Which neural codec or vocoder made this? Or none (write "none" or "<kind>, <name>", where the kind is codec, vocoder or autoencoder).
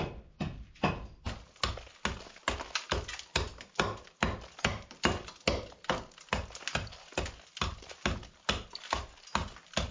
none